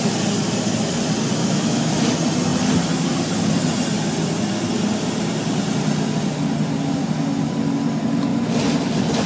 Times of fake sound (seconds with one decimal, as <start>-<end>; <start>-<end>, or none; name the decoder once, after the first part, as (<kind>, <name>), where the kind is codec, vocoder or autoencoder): 1.4-2.0 (autoencoder, DAC-VAE)